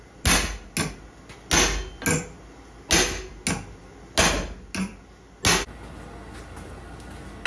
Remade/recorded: recorded